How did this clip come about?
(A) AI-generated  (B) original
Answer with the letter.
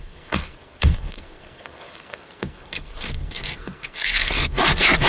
A